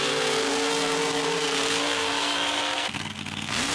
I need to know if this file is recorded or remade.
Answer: remade